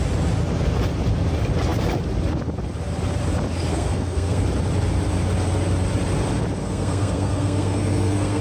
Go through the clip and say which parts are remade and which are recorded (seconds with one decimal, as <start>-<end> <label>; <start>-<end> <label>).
0.0-3.7 recorded; 3.7-4.4 remade; 4.4-6.6 recorded; 6.6-8.4 remade